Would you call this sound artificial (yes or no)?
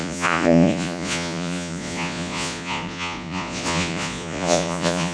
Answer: yes